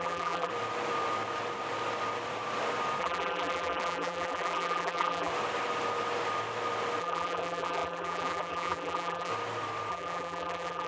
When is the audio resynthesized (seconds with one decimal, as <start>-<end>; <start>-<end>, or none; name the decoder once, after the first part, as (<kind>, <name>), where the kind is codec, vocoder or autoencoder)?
0.0-0.5 (vocoder, BigVGAN v2); 3.0-5.3; 7.0-9.3; 9.9-10.9